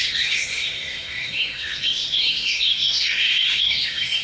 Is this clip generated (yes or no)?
yes